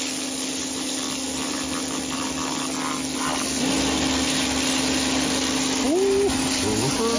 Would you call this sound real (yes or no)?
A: yes